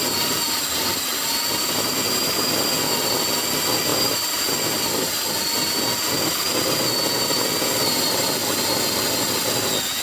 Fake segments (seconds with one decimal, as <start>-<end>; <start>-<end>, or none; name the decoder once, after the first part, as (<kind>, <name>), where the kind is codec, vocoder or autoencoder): none